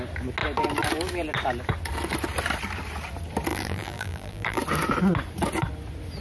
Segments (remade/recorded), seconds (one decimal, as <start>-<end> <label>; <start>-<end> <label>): 0.0-3.5 recorded; 3.5-4.6 remade; 4.6-6.2 recorded